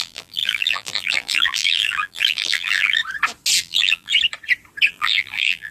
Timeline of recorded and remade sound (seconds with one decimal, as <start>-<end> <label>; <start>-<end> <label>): 0.0-3.0 remade; 3.0-3.6 recorded; 3.6-4.1 remade; 4.1-4.9 recorded; 4.9-5.7 remade